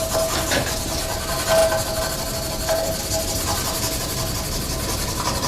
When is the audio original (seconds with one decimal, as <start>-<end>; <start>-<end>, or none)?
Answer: 0.0-5.5